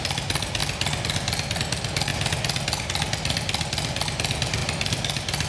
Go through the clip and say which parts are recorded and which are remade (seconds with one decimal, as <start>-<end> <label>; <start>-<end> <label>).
0.0-2.1 recorded; 2.1-2.8 remade; 2.8-4.6 recorded; 4.6-5.5 remade